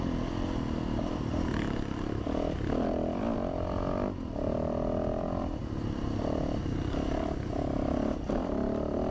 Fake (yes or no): no